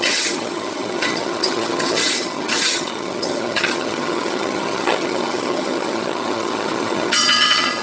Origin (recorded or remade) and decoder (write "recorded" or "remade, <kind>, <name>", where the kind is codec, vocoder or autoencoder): remade, vocoder, HiFi-GAN